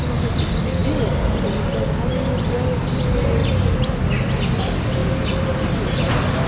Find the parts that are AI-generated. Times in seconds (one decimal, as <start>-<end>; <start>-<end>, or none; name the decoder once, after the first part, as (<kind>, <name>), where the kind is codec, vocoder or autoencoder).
none